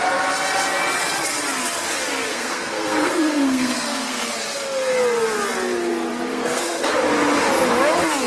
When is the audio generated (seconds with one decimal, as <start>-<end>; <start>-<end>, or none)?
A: 2.3-4.3; 6.3-6.9